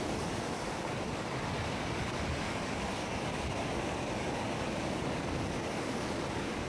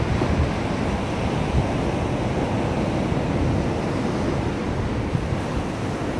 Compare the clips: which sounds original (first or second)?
second